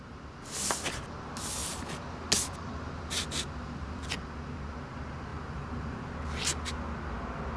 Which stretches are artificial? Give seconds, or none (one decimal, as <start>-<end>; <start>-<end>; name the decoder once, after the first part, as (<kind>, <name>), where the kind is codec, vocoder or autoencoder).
5.3-6.1 (vocoder, BigVGAN v2)